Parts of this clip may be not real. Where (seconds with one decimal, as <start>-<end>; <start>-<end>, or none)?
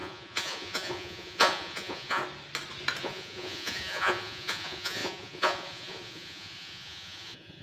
0.0-2.2; 3.0-7.6